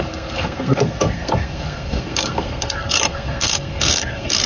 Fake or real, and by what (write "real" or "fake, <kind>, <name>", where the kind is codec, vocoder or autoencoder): fake, codec, SNAC